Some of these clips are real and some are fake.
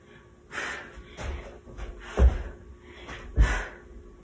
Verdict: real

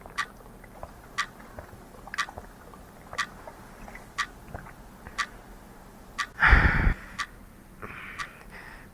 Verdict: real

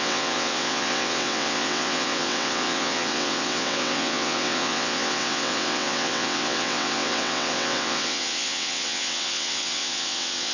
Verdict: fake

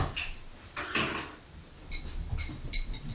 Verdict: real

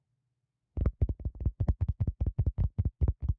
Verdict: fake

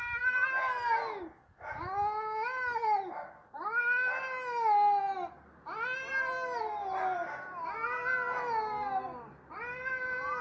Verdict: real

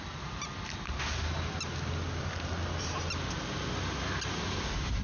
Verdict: real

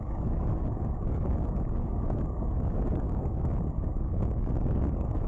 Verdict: fake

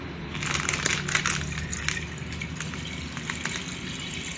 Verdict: real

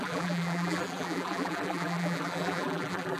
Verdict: fake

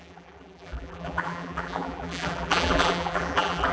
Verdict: fake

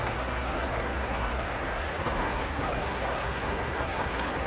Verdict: fake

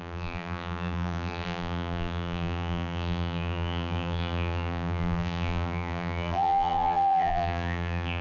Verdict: fake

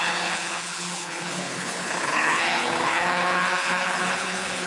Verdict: fake